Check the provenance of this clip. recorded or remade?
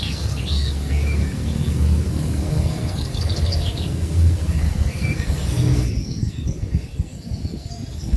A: remade